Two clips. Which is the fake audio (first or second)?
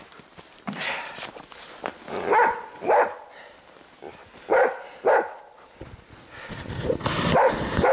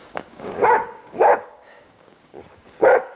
second